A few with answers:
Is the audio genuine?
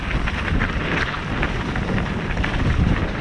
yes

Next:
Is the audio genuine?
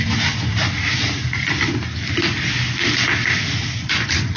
yes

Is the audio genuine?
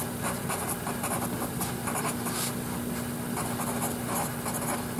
yes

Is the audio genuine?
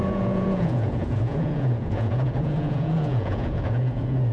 no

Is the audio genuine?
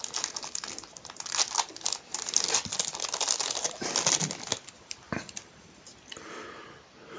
yes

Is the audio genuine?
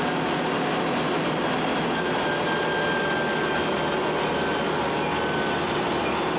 yes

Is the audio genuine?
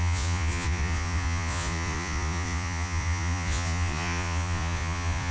no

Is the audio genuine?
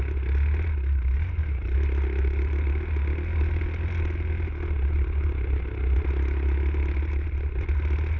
yes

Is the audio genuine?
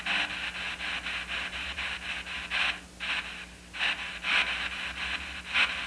yes